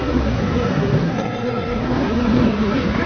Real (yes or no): no